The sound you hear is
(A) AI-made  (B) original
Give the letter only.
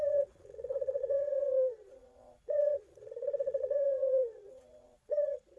A